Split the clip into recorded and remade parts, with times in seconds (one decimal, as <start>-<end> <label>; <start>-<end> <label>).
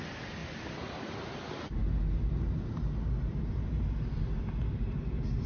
0.0-5.5 recorded